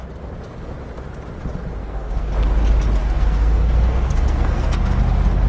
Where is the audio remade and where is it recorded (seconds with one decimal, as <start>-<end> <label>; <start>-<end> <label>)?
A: 0.0-1.8 recorded; 1.8-2.3 remade; 2.3-3.0 recorded; 3.0-5.0 remade; 5.0-5.5 recorded